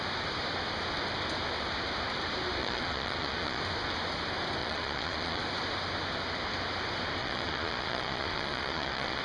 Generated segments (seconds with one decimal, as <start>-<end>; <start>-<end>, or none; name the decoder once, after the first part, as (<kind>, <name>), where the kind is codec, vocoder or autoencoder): 2.6-3.6 (vocoder, Vocos); 4.6-5.4; 7.2-9.2